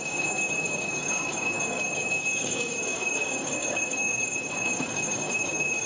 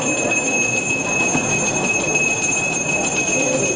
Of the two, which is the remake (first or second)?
first